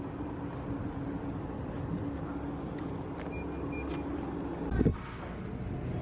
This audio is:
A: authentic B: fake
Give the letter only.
A